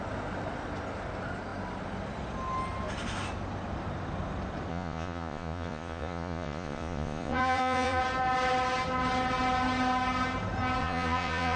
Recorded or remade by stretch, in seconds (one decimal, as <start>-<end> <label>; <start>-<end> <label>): 0.0-4.7 recorded; 4.7-8.0 remade; 8.0-10.8 recorded; 10.8-11.6 remade